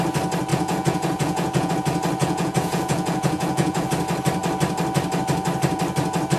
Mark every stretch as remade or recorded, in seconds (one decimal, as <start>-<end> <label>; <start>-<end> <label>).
0.0-0.5 recorded; 0.5-1.7 remade; 1.7-2.2 recorded; 2.2-3.9 remade; 3.9-6.4 recorded